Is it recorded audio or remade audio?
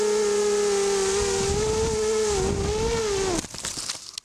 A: recorded